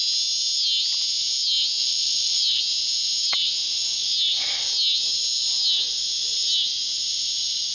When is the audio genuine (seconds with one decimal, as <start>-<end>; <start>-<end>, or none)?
0.0-1.8; 2.6-7.7